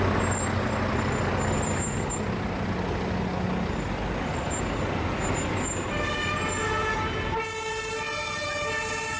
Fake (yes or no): no